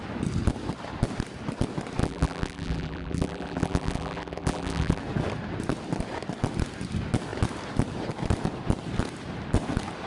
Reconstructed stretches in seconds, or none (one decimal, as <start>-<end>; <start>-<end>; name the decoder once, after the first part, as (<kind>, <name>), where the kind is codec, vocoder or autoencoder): 2.0-5.0 (vocoder, BigVGAN v2)